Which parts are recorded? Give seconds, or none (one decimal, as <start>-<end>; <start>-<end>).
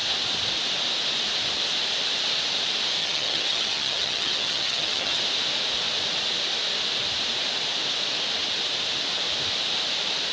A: 0.0-3.0; 5.2-10.3